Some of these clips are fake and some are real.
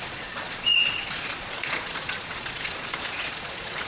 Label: fake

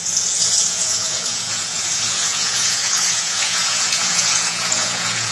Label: fake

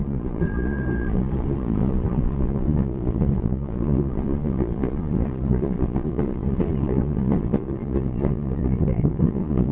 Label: fake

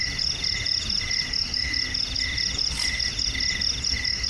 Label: real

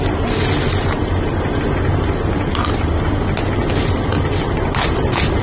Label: real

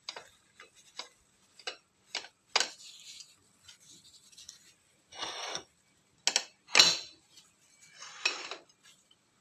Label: real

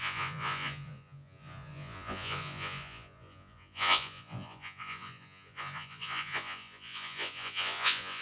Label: fake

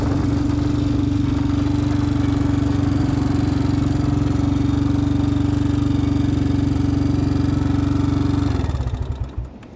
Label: real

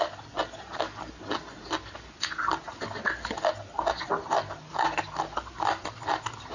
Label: real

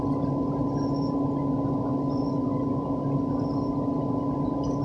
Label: real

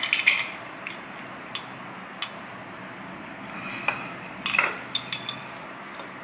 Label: real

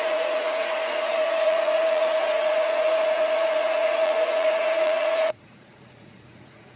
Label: fake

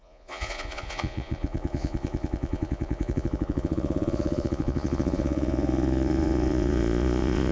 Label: fake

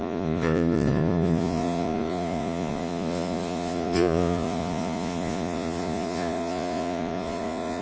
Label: fake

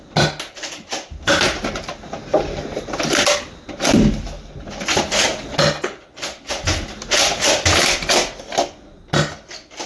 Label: real